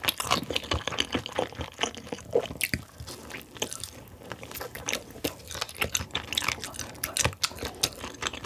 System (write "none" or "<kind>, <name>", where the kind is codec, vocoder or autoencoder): none